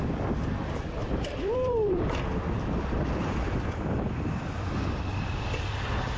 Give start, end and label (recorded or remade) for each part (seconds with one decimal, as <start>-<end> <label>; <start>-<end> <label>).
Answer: 0.0-1.0 recorded; 1.0-4.7 remade; 4.7-6.2 recorded